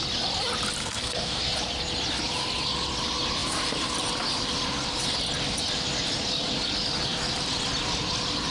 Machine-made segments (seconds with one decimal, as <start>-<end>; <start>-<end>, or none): 0.8-1.4